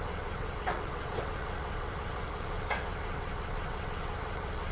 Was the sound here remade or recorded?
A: remade